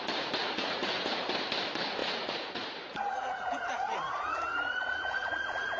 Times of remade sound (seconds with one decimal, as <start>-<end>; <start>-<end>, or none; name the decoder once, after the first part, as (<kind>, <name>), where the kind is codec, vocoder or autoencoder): 0.4-1.3 (vocoder, Vocos); 2.0-5.8